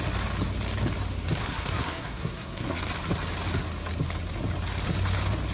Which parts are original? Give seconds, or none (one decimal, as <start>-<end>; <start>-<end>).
0.0-1.4; 2.8-5.5